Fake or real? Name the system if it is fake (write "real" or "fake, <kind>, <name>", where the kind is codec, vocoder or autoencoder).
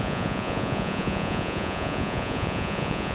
fake, vocoder, Vocos